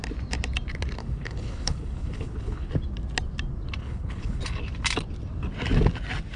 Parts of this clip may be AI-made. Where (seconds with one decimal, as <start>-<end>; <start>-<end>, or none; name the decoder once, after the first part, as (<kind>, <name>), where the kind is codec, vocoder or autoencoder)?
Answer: 1.0-2.7 (codec, HILCodec); 3.8-4.4